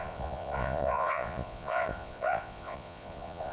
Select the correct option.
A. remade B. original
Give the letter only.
A